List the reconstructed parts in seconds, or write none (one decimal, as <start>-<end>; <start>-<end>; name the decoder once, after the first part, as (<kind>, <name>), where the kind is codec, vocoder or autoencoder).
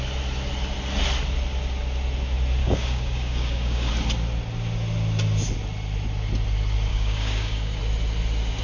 2.6-3.9 (codec, DAC); 6.9-7.8